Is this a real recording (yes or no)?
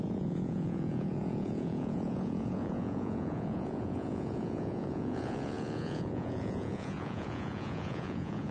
no